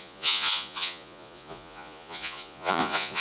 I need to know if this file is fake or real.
fake